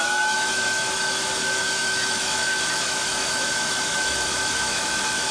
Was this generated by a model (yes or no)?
yes